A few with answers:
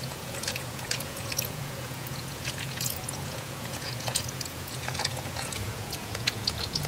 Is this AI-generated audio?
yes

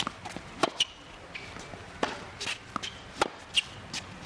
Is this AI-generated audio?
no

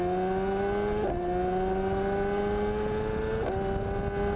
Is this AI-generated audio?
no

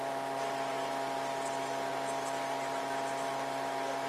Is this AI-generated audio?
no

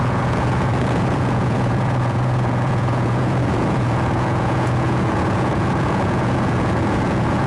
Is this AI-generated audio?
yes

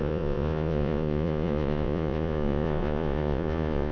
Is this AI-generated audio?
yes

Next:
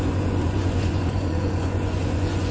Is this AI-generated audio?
yes